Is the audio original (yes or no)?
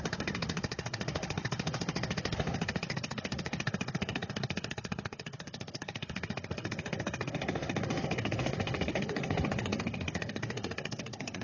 no